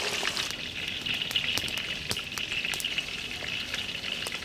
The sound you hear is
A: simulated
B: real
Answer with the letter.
B